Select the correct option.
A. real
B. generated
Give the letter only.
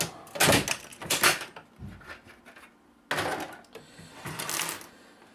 A